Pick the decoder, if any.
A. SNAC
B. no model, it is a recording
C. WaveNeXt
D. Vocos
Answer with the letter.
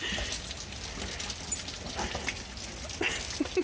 B